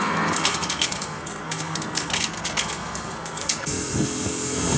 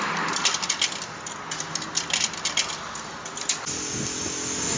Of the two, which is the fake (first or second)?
first